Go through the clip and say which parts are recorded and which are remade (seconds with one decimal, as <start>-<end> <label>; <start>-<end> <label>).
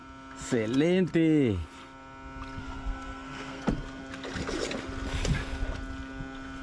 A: 0.0-2.6 recorded; 2.6-3.6 remade; 3.6-6.6 recorded